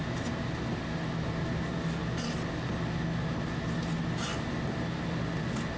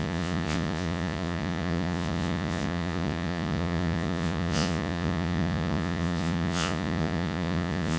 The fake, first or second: second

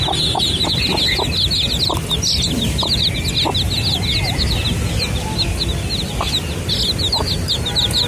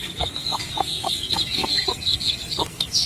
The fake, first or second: second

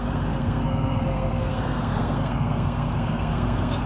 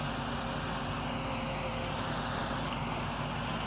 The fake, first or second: first